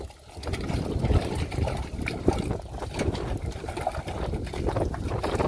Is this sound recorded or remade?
recorded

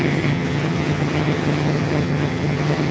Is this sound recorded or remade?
remade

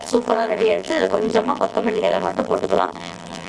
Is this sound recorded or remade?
remade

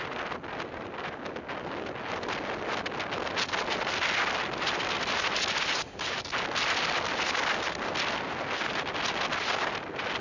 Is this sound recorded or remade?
recorded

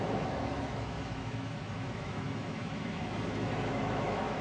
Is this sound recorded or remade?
remade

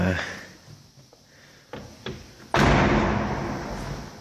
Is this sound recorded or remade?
recorded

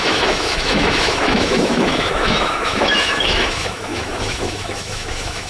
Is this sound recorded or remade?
remade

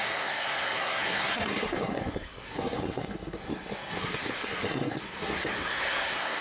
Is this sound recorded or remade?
remade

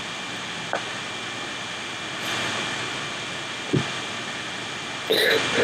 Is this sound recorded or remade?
recorded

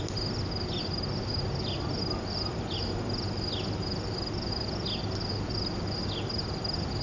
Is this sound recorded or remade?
recorded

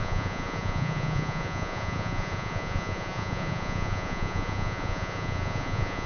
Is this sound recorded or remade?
remade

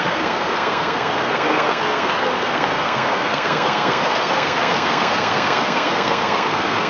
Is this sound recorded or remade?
remade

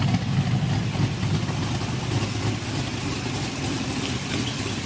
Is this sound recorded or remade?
recorded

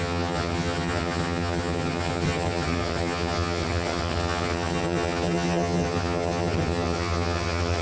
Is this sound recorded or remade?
remade